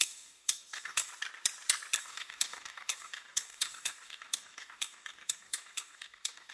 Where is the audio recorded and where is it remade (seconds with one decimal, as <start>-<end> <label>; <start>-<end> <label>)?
0.0-1.1 remade; 1.1-2.0 recorded; 2.0-6.5 remade